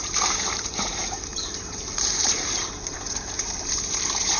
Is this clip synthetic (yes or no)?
yes